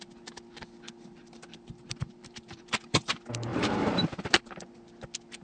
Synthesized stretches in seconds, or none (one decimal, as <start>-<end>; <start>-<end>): 1.2-3.1; 3.5-4.4